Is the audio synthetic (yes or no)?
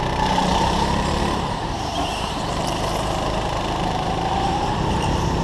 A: yes